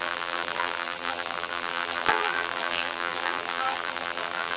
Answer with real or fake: fake